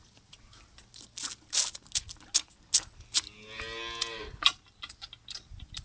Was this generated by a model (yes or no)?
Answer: no